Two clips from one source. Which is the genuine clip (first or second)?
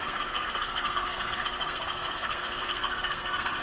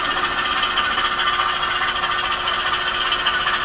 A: second